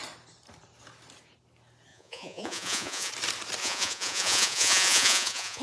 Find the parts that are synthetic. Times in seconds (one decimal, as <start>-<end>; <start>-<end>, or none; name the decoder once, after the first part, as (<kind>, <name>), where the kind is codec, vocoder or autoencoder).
1.9-3.1 (vocoder, Vocos); 3.6-5.6

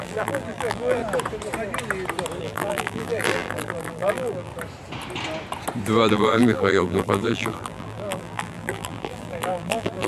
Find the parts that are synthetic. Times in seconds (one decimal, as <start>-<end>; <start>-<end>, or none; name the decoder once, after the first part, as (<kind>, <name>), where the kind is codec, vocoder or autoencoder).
0.0-1.0 (vocoder, BigVGAN v2); 2.4-4.5; 6.1-10.1